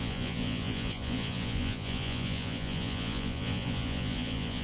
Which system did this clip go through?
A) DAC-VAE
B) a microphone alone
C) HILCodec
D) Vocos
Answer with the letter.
D